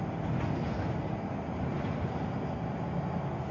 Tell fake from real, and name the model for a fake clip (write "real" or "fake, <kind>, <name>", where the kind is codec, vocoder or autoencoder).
real